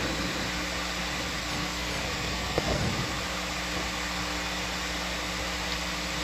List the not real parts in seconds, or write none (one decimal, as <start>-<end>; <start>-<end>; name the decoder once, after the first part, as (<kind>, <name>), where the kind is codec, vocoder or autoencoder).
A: 1.4-2.9 (codec, SNAC)